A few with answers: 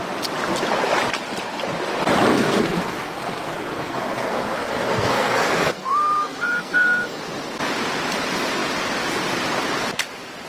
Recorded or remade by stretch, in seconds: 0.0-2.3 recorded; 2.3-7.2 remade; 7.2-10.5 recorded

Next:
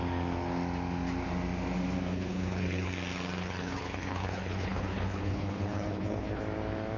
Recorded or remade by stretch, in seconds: 0.0-2.1 recorded; 2.1-2.9 remade; 2.9-3.4 recorded; 3.4-6.4 remade; 6.4-7.0 recorded

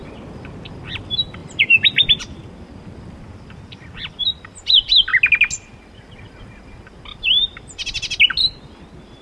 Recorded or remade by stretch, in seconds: 0.0-1.4 recorded; 1.4-2.1 remade; 2.1-9.2 recorded

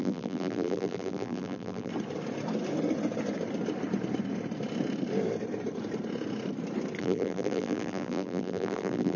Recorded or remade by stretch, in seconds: 0.0-1.9 remade; 1.9-7.0 recorded; 7.0-9.2 remade